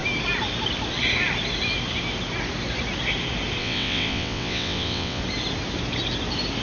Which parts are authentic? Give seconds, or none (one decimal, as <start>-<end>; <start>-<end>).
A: 0.0-3.6; 5.2-6.6